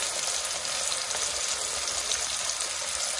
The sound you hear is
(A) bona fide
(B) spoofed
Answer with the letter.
A